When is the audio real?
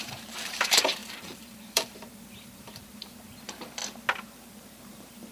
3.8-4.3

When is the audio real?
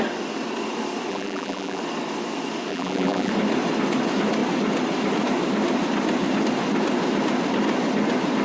0.0-1.1; 1.8-2.7; 3.3-8.4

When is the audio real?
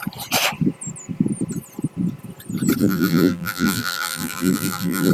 0.0-2.8